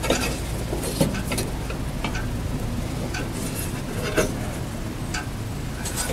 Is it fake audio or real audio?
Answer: real